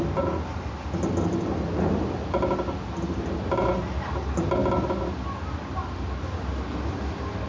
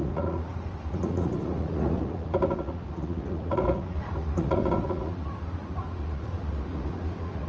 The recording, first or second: first